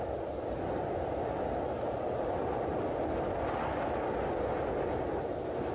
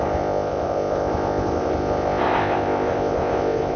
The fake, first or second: second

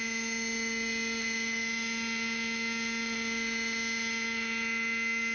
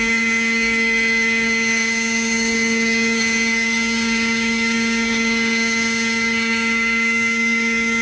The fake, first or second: second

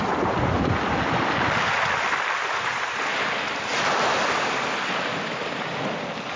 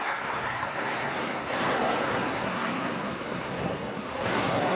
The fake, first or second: second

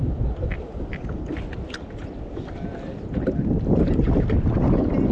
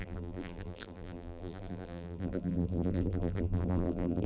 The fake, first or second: second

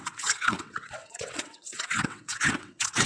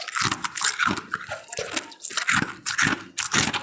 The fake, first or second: first